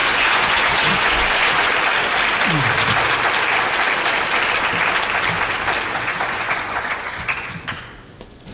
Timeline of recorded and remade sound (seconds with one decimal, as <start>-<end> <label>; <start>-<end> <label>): 0.0-1.7 remade; 1.7-6.0 recorded; 6.0-8.5 remade